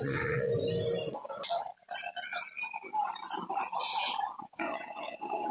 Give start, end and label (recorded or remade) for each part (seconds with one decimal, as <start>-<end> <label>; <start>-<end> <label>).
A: 0.0-0.5 remade; 0.5-1.1 recorded; 1.1-1.7 remade; 1.7-4.4 recorded; 4.4-5.5 remade